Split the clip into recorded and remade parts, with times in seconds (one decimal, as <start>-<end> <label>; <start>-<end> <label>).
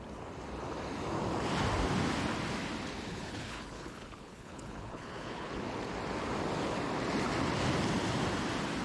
0.0-3.1 recorded; 3.1-5.6 remade; 5.6-8.8 recorded